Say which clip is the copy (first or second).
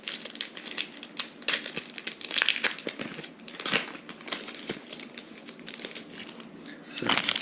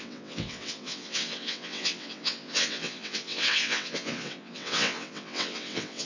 second